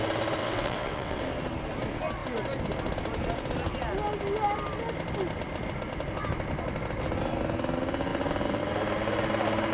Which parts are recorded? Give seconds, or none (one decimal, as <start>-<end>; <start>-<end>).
0.0-0.4; 1.2-9.7